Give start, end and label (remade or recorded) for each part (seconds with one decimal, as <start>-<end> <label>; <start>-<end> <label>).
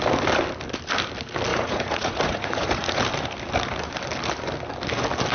0.0-1.5 recorded; 1.5-3.0 remade; 3.0-5.3 recorded